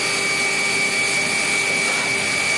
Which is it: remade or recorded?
recorded